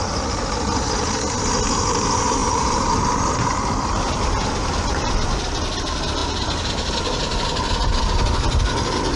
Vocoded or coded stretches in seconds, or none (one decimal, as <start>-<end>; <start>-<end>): 2.4-3.7; 6.2-8.0